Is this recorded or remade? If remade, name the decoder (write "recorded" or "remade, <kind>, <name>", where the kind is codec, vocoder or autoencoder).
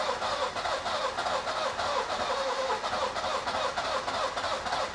recorded